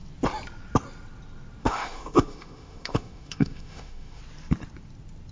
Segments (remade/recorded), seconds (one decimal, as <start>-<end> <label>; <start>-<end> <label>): 0.0-1.6 recorded; 1.6-4.2 remade; 4.2-5.3 recorded